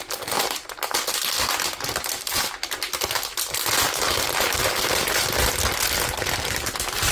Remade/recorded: recorded